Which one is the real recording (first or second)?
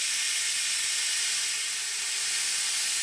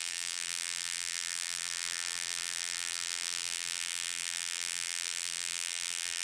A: first